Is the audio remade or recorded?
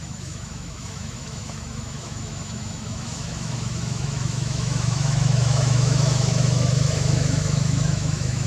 remade